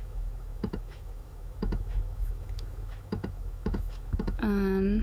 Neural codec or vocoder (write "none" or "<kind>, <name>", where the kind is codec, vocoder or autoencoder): autoencoder, DAC-VAE